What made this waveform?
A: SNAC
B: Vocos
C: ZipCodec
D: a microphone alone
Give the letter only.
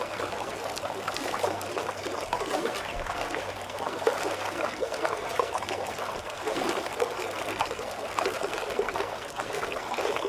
A